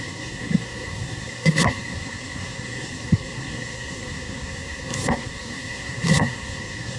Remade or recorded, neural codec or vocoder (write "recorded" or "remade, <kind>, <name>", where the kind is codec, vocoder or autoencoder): remade, codec, SNAC